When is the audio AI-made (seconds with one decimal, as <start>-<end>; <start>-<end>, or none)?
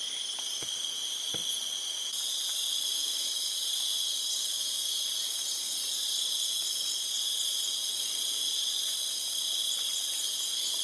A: none